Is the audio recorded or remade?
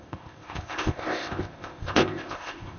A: remade